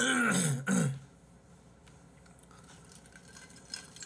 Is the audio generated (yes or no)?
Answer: no